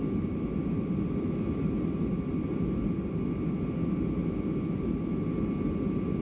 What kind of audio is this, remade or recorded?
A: recorded